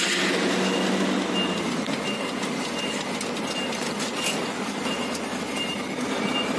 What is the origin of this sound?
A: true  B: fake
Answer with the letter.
A